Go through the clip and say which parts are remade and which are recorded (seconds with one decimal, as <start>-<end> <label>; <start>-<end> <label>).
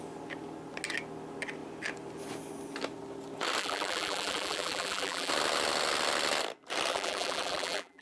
0.0-3.6 recorded; 3.6-5.3 remade; 5.3-6.9 recorded; 6.9-8.0 remade